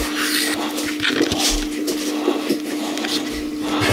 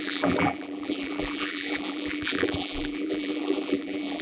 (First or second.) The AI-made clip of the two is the second